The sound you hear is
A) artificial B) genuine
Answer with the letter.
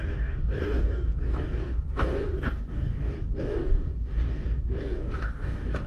A